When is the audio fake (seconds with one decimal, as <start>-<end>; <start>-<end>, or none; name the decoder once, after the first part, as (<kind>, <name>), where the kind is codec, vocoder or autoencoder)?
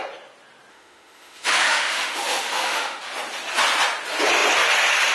0.7-3.0 (autoencoder, DAC-VAE)